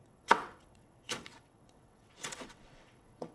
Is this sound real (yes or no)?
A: no